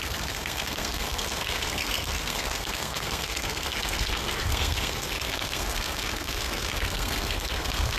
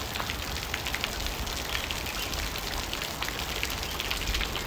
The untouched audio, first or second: second